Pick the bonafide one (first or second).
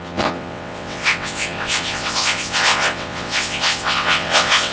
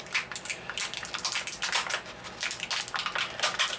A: second